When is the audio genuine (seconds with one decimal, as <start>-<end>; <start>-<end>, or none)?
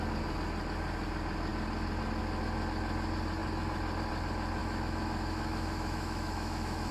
0.0-4.6